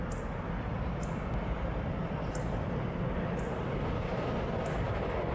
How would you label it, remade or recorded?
recorded